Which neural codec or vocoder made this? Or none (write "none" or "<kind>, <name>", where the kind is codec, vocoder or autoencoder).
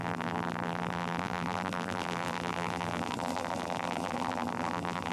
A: vocoder, BigVGAN v2